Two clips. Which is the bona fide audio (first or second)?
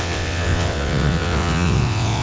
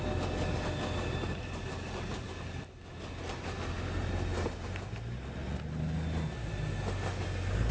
second